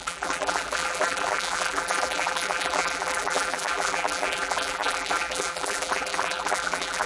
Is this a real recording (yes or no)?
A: no